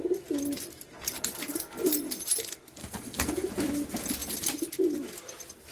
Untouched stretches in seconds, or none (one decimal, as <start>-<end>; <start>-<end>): 0.0-1.4; 1.9-2.8; 3.5-5.7

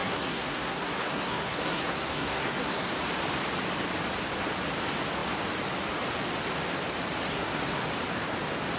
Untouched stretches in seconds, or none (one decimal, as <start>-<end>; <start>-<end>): 2.9-7.3; 7.8-8.8

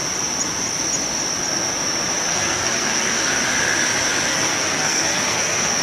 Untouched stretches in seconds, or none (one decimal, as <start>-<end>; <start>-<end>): 0.0-2.3; 3.3-4.3

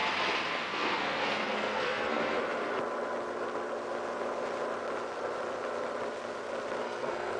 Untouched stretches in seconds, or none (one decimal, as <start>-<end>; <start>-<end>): 0.0-0.5; 2.4-6.8